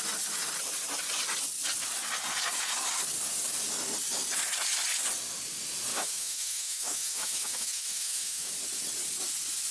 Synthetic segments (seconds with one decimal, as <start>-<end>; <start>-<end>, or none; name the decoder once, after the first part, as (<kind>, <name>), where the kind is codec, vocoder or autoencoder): 5.9-8.5 (autoencoder, DAC-VAE)